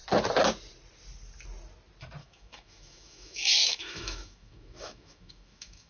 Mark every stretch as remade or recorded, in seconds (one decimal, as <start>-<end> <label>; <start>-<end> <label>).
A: 0.0-2.2 recorded; 2.2-5.9 remade

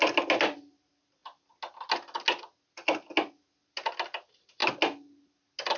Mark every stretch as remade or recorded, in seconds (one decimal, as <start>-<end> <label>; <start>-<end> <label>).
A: 0.0-5.8 recorded